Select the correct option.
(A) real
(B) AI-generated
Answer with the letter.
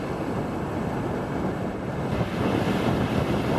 A